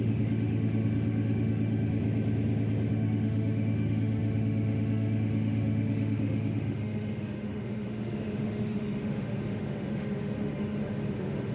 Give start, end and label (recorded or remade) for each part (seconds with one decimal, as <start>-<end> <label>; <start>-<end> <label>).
0.0-2.0 remade; 2.0-2.9 recorded; 2.9-11.5 remade